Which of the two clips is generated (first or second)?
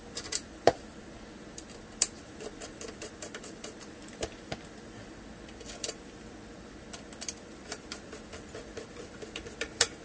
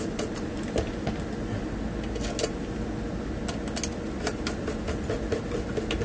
first